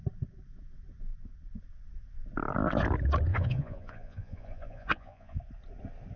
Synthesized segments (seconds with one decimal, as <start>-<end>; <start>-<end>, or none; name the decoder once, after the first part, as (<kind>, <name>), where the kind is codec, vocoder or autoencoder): 3.3-5.4 (vocoder, Vocos)